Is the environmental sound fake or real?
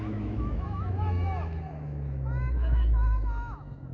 fake